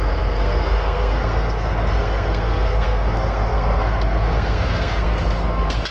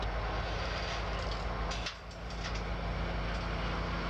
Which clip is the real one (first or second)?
second